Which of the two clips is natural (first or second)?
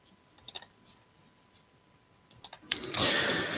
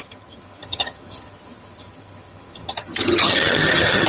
first